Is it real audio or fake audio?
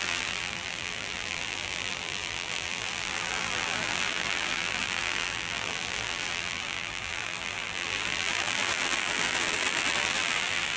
fake